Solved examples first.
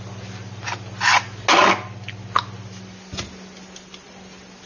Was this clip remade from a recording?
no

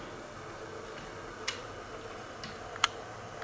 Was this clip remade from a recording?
no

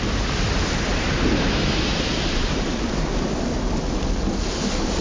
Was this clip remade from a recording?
no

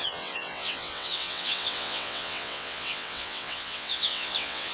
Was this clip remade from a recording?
yes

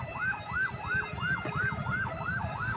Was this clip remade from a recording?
no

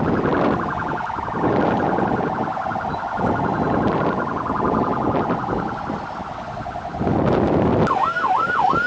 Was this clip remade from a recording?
no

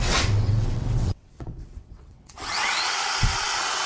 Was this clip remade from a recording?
yes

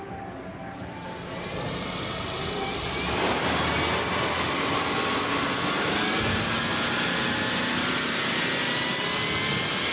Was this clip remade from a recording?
no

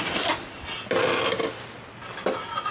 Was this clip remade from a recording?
no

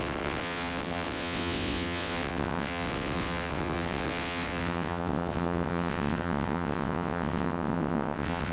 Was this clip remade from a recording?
yes